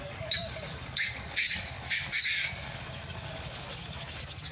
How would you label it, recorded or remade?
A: remade